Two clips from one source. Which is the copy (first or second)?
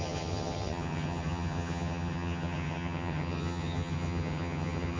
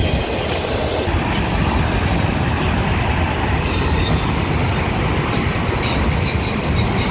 first